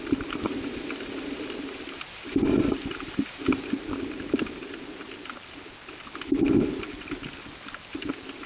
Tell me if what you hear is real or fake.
real